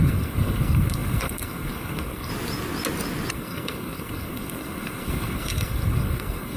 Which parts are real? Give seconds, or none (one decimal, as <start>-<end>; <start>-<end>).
2.3-3.3